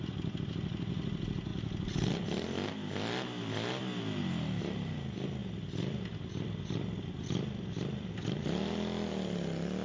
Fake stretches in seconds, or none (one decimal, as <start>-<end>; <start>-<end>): none